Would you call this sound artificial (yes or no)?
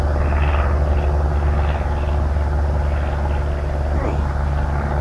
no